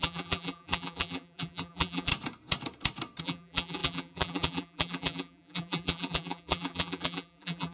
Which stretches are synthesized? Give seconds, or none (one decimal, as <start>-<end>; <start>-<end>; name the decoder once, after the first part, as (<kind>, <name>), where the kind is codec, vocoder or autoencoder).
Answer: 0.0-2.1 (vocoder, BigVGAN v2); 3.2-7.7